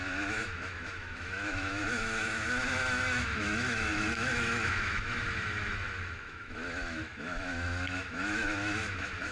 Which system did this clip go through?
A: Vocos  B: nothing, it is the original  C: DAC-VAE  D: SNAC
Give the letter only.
C